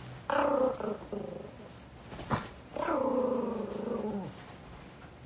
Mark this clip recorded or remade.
recorded